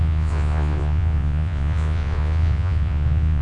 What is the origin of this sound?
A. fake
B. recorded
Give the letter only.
A